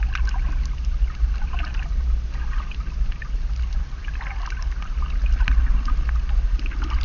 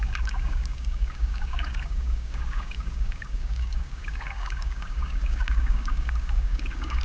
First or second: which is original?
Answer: first